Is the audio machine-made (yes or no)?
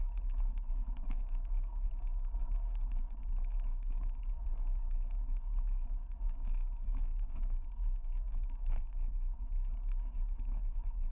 yes